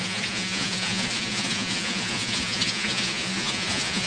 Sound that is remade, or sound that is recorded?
remade